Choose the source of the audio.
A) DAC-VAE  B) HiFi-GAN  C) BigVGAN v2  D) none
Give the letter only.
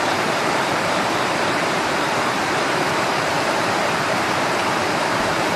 C